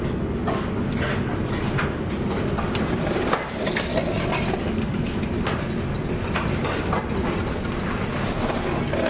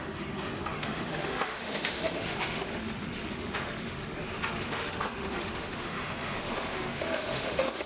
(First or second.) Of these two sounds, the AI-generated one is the second